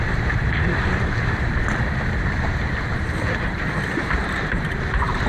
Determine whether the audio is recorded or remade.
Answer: remade